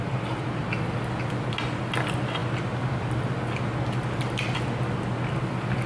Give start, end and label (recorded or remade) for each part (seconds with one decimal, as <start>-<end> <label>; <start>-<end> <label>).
0.0-5.9 recorded